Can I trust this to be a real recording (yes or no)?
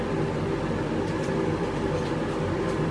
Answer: yes